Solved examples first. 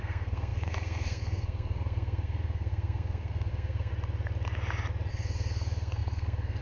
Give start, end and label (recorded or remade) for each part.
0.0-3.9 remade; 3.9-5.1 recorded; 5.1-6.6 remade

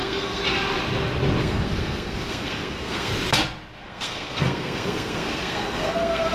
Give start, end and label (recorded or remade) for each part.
0.0-0.4 remade; 0.4-1.4 recorded; 1.4-3.1 remade; 3.1-3.8 recorded; 3.8-6.3 remade

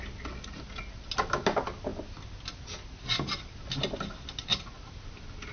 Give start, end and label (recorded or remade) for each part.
0.0-5.5 recorded

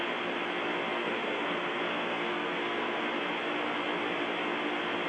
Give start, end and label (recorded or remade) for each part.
0.0-0.9 recorded; 0.9-3.0 remade; 3.0-5.1 recorded

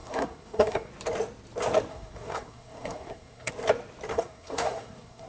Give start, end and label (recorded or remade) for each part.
0.0-0.9 remade; 0.9-1.9 recorded; 1.9-3.5 remade; 3.5-4.1 recorded; 4.1-5.3 remade

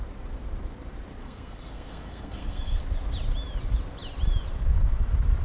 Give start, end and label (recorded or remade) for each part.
0.0-1.2 recorded; 1.2-2.8 remade; 2.8-5.4 recorded

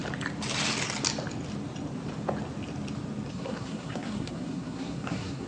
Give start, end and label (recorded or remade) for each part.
0.0-3.3 recorded; 3.3-5.5 remade